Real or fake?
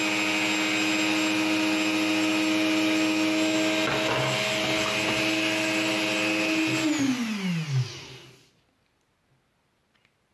real